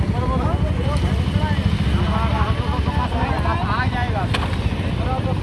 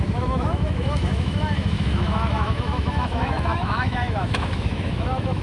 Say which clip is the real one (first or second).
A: first